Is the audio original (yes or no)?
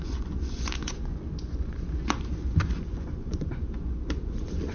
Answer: no